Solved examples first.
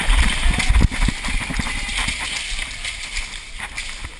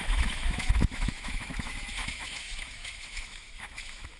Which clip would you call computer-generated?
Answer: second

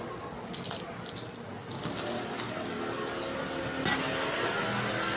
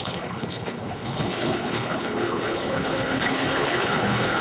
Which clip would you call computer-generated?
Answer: second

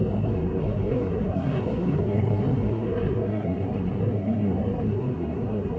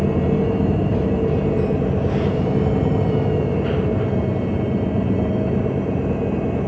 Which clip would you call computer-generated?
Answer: first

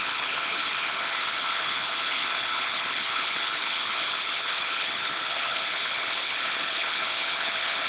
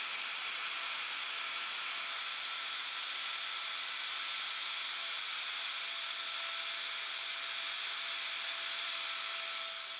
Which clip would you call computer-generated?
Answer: first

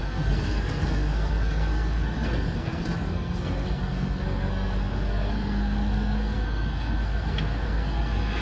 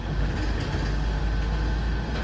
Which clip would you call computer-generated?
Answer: first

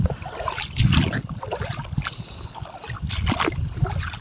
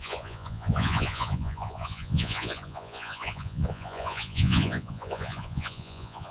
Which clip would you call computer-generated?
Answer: second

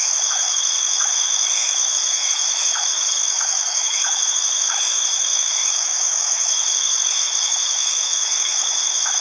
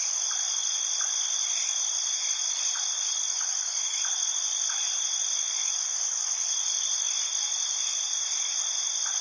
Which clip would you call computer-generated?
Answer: first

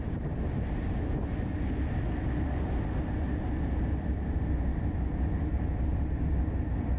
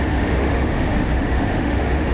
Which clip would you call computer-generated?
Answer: second